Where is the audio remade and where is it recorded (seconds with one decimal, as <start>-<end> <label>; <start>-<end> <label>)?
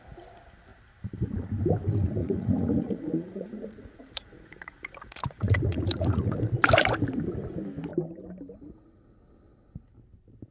0.0-2.2 recorded; 2.2-6.4 remade; 6.4-10.5 recorded